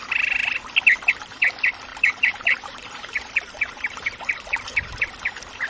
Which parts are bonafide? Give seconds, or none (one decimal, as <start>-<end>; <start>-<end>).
0.0-1.9; 5.1-5.7